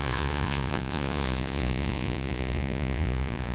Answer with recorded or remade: remade